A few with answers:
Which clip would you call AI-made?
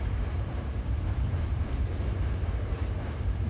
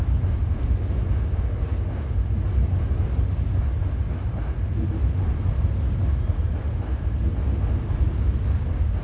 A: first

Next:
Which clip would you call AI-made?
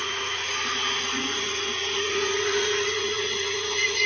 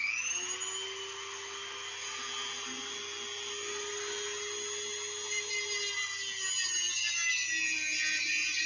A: first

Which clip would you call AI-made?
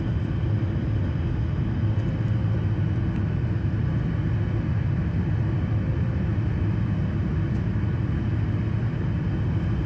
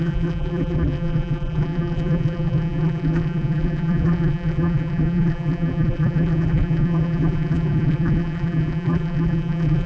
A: second